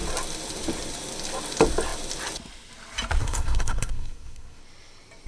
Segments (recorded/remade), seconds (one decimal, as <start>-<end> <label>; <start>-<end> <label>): 0.0-3.2 recorded; 3.2-4.6 remade; 4.6-5.3 recorded